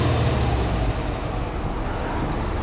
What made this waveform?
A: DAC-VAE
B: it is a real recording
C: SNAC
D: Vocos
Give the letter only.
B